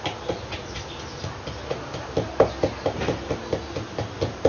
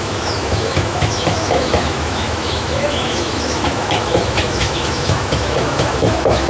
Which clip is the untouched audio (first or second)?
first